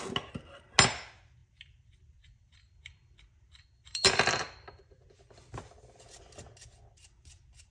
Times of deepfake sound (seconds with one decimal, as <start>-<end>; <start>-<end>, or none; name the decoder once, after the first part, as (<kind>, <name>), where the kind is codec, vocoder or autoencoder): 1.4-5.1 (vocoder, BigVGAN v2)